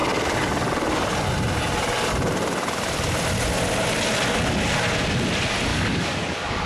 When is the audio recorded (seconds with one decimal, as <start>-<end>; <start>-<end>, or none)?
0.0-5.7